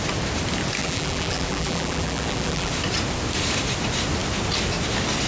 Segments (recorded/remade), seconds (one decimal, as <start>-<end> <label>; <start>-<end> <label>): 0.0-0.8 recorded; 0.8-2.7 remade; 2.7-5.3 recorded